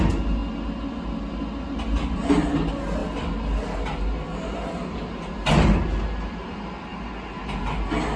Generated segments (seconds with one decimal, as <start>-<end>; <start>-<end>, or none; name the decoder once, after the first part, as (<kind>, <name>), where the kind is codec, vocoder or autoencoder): none